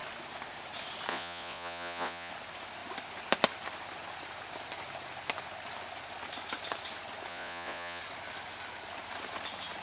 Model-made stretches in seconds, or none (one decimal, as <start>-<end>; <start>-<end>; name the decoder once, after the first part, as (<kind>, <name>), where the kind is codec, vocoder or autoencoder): 1.1-2.3 (vocoder, Vocos); 7.3-8.0